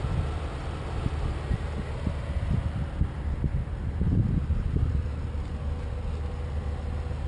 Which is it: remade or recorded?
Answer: recorded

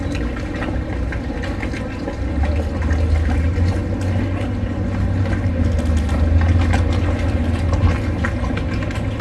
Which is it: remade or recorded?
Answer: recorded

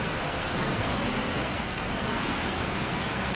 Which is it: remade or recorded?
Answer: remade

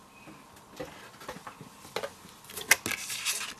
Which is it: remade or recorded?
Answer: recorded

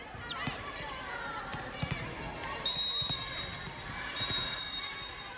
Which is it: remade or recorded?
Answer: recorded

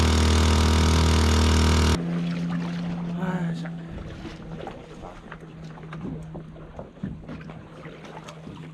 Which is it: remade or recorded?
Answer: recorded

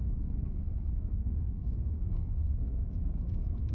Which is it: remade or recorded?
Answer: remade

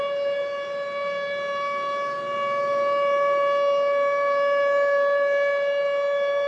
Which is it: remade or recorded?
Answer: recorded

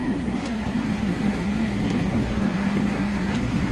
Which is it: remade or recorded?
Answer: remade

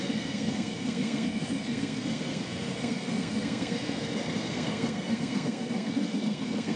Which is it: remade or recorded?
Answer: remade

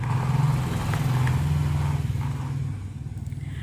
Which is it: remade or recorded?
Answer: recorded